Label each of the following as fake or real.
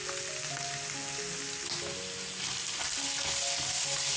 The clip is real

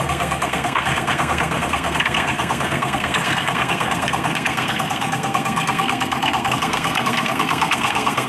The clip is fake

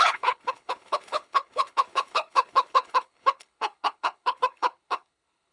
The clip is fake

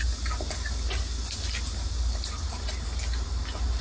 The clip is real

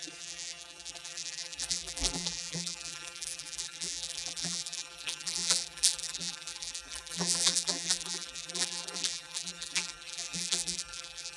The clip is fake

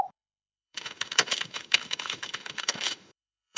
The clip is fake